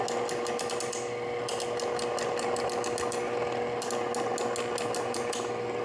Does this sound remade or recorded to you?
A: recorded